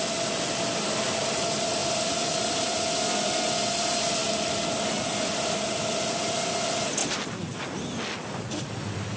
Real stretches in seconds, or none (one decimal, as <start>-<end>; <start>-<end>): 0.0-1.8; 6.1-9.2